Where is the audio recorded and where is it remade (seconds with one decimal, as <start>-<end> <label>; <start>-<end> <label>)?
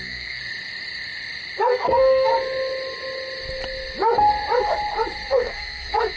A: 0.0-0.4 remade; 0.4-1.6 recorded; 1.6-2.3 remade; 2.3-5.3 recorded; 5.3-6.2 remade